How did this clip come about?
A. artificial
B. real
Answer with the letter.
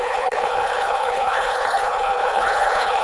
A